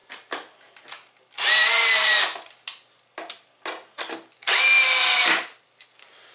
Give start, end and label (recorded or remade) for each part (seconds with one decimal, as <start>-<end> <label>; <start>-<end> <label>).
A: 0.0-6.3 recorded